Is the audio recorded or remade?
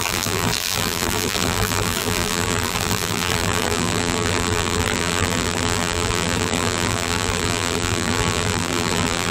remade